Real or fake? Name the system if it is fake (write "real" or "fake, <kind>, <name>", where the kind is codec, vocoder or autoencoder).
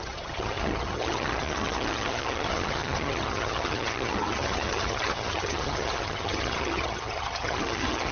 fake, vocoder, HiFi-GAN